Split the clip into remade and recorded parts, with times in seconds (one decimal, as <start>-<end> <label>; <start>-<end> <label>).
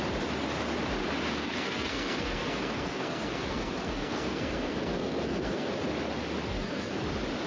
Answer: 0.0-1.4 recorded; 1.4-5.7 remade; 5.7-6.5 recorded; 6.5-7.0 remade; 7.0-7.5 recorded